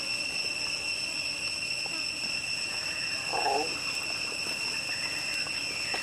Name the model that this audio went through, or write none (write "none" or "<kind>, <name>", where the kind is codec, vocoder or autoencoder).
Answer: none